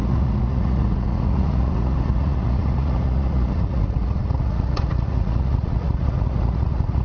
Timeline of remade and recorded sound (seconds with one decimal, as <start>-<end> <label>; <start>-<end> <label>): 0.0-7.0 remade